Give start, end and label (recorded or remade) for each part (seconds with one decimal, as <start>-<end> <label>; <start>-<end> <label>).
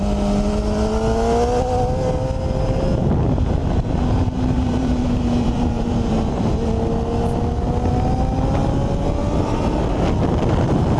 0.0-3.6 recorded; 3.6-6.5 remade; 6.5-11.0 recorded